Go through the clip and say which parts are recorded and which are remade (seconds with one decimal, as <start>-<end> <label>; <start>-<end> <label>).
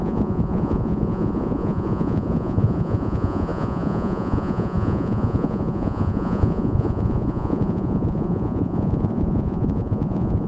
0.0-10.5 remade